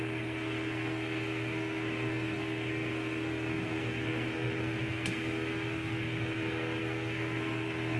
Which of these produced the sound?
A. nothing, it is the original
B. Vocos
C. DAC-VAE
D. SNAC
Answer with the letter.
D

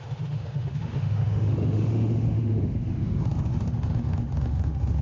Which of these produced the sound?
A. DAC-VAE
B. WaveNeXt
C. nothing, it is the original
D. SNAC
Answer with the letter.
A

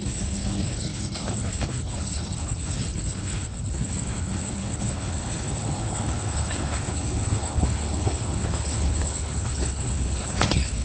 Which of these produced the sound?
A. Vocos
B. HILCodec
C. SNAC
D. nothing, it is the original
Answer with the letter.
B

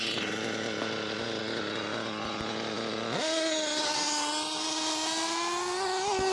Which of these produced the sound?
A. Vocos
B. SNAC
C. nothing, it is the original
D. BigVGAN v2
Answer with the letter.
C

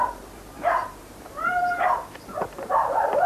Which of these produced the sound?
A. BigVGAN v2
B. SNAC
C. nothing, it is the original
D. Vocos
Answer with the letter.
A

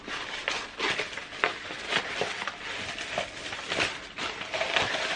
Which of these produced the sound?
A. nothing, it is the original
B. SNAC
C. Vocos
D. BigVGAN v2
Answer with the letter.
A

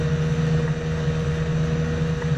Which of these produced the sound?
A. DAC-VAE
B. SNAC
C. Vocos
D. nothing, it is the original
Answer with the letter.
D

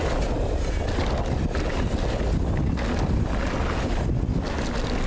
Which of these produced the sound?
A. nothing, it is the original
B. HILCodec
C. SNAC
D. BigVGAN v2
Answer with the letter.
A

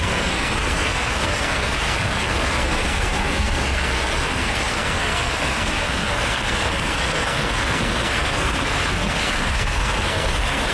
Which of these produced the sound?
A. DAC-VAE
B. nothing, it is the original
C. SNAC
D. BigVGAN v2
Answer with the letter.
C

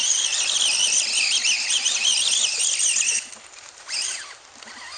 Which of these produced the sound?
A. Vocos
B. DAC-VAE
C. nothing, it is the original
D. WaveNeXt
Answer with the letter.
C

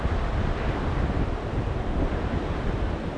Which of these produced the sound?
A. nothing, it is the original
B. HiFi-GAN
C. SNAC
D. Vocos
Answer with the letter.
A